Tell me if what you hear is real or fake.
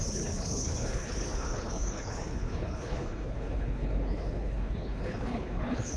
fake